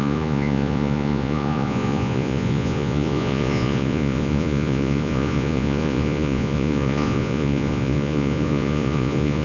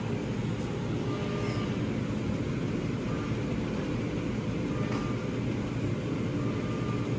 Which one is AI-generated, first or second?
first